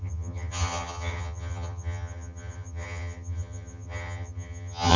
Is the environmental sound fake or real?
fake